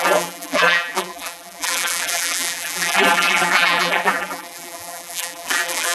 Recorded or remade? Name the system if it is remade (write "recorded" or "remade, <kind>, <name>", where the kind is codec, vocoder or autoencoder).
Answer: remade, vocoder, BigVGAN v2